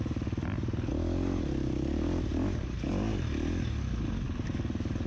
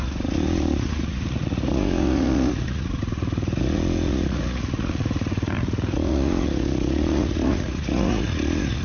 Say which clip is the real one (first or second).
first